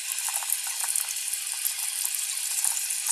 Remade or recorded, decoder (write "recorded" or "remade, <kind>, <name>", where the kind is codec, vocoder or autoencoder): recorded